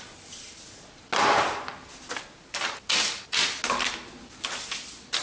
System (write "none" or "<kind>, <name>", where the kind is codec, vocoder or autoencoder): none